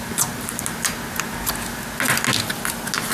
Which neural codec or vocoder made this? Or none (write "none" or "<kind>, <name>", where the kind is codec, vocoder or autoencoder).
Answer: none